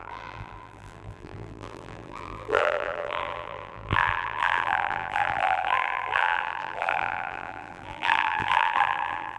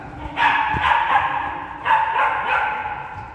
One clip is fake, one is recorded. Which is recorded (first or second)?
second